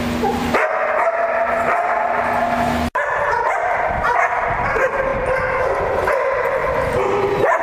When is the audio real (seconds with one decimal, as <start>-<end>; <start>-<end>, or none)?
0.0-7.6